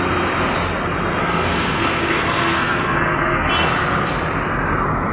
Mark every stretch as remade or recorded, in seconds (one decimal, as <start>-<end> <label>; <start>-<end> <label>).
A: 0.0-1.2 recorded; 1.2-3.5 remade; 3.5-5.1 recorded